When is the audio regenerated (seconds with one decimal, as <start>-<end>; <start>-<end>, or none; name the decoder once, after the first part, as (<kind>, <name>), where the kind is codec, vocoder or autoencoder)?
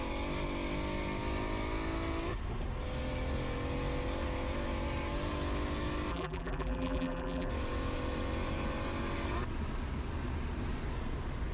6.1-7.5 (vocoder, BigVGAN v2)